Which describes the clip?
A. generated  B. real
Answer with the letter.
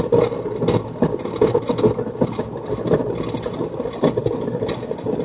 B